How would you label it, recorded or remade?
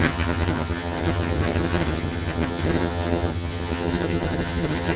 remade